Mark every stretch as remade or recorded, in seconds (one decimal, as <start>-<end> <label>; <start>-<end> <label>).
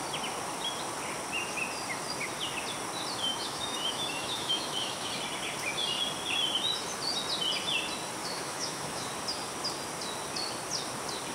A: 0.0-3.3 recorded; 3.3-5.1 remade; 5.1-8.2 recorded; 8.2-9.1 remade; 9.1-11.3 recorded